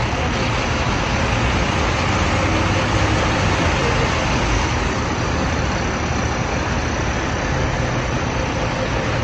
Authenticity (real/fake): real